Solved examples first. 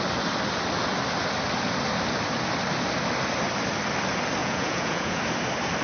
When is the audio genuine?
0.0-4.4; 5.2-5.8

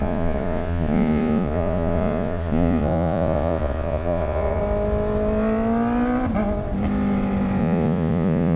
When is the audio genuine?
4.6-7.6

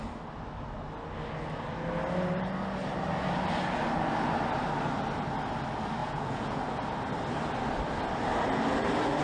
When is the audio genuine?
0.0-6.0; 6.6-9.2

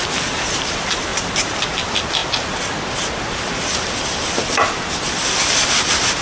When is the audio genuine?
0.0-6.2

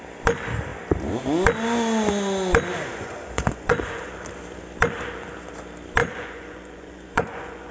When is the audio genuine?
0.0-2.8; 4.1-6.0

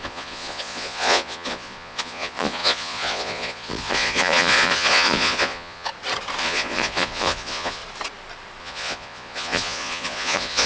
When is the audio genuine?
5.9-6.4; 7.8-8.6

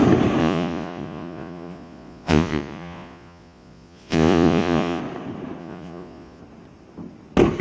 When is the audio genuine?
0.0-0.4; 5.0-5.6; 6.4-7.6

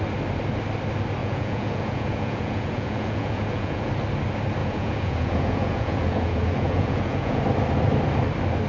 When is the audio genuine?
0.0-1.2; 3.9-4.6; 7.4-8.7